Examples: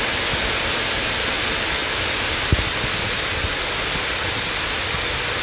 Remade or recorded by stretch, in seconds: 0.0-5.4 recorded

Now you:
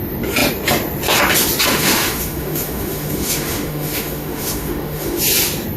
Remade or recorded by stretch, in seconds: 0.0-1.7 recorded; 1.7-5.2 remade; 5.2-5.8 recorded

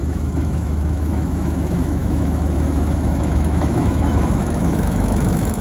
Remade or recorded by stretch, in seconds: 0.0-5.6 remade

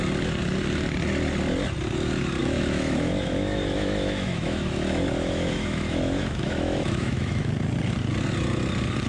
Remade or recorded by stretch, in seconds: 0.0-2.4 recorded; 2.4-7.5 remade; 7.5-9.1 recorded

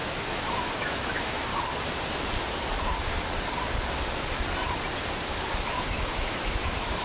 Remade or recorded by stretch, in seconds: 0.0-1.5 remade; 1.5-5.7 recorded; 5.7-7.0 remade